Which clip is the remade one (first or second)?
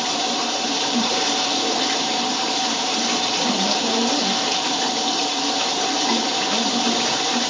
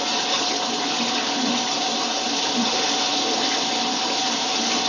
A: first